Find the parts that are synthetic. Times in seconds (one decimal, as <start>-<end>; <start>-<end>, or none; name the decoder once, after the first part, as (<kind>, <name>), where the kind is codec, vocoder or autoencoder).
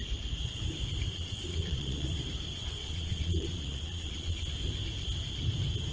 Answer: 1.1-2.2 (vocoder, Vocos); 2.8-4.4